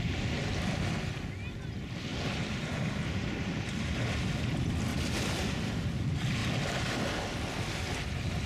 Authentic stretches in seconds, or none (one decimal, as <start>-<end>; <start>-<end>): 0.0-8.5